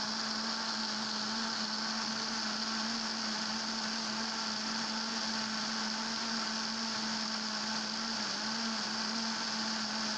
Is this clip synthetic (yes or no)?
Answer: no